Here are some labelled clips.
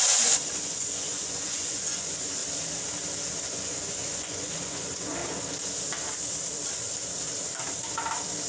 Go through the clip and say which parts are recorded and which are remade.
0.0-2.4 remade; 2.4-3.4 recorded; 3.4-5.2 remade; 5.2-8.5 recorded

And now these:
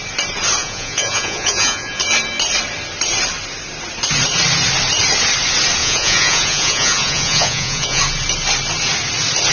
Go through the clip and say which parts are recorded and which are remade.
0.0-0.6 recorded; 0.6-2.0 remade; 2.0-5.8 recorded; 5.8-8.0 remade; 8.0-9.5 recorded

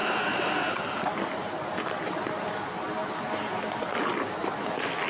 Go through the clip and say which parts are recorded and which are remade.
0.0-5.1 recorded

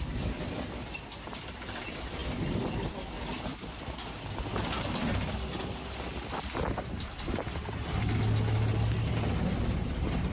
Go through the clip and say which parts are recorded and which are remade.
0.0-10.3 recorded

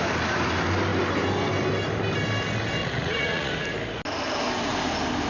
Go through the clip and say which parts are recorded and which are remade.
0.0-2.8 recorded; 2.8-3.5 remade; 3.5-5.3 recorded

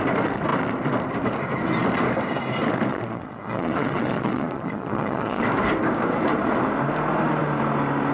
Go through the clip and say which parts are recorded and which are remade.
0.0-2.9 recorded; 2.9-5.4 remade; 5.4-8.1 recorded

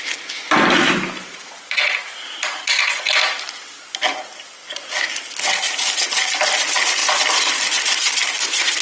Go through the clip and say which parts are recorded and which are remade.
0.0-1.2 recorded; 1.2-1.9 remade; 1.9-8.8 recorded

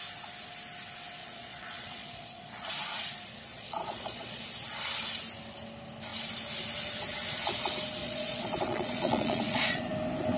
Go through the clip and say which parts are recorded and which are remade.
0.0-1.2 recorded; 1.2-2.7 remade; 2.7-3.5 recorded; 3.5-4.4 remade; 4.4-8.0 recorded; 8.0-9.8 remade; 9.8-10.4 recorded